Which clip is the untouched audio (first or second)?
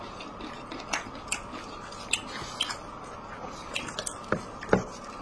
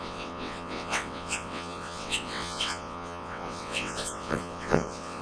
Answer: first